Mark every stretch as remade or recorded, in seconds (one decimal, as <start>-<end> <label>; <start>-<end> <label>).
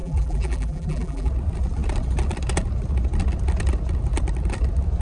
0.0-1.3 remade; 1.3-5.0 recorded